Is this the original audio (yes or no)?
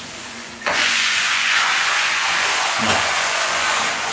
no